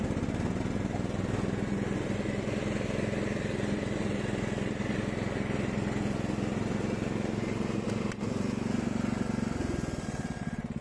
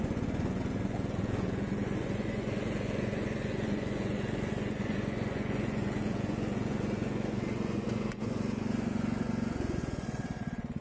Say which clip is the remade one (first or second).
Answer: second